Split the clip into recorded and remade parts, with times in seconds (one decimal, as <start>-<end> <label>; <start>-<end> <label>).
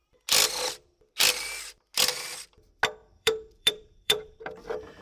0.0-3.0 recorded; 3.0-5.0 remade